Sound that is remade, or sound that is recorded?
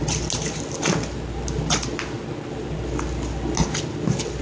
recorded